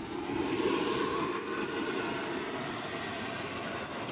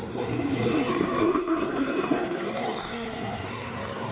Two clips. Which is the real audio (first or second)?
first